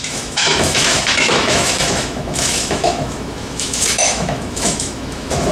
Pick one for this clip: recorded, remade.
remade